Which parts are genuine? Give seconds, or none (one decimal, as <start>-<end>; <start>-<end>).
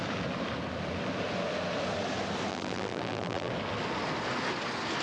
0.0-2.5; 3.5-5.0